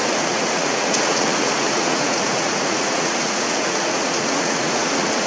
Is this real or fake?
fake